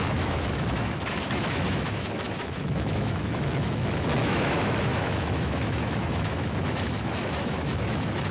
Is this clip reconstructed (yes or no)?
yes